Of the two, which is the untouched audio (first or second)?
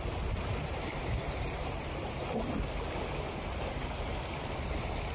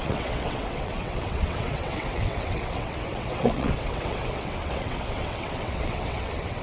first